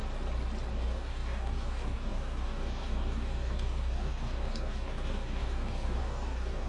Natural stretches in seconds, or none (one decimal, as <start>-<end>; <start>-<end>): 0.0-0.7